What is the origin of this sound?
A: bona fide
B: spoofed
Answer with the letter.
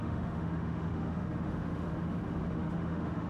B